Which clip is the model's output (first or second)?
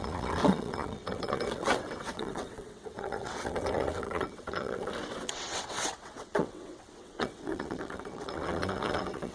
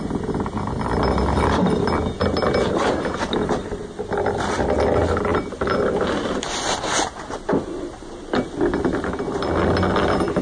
first